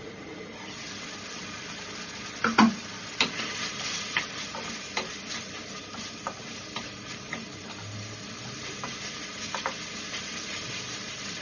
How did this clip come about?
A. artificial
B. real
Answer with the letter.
B